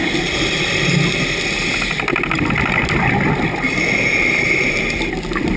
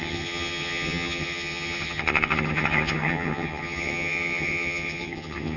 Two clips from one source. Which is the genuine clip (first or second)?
first